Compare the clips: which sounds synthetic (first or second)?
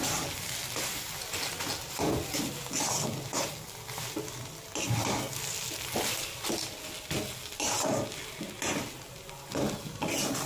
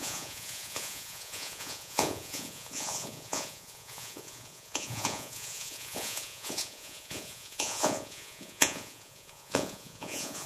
second